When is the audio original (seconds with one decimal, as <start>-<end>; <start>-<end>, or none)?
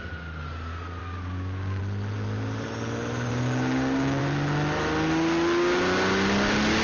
0.0-1.0; 1.8-3.3; 4.2-6.8